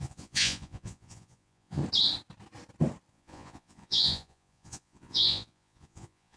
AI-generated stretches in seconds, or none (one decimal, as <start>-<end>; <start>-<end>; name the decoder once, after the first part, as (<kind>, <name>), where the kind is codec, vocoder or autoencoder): 0.0-1.8 (vocoder, Vocos); 3.1-6.4